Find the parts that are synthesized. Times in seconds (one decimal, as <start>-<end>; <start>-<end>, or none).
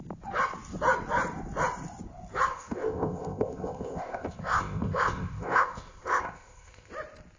2.5-6.9